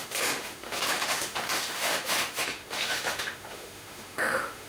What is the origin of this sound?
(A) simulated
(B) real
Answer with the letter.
A